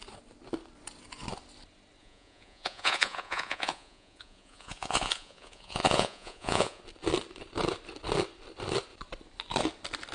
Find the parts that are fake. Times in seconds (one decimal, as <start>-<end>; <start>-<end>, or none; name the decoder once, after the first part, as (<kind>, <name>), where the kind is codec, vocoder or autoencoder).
2.0-6.8 (vocoder, Vocos)